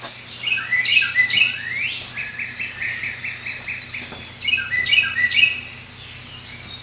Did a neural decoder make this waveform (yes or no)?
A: no